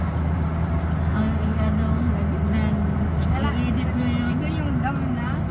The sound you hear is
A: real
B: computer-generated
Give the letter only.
A